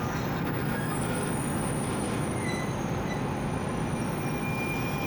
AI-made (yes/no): no